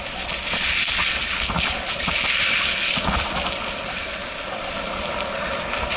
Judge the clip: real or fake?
real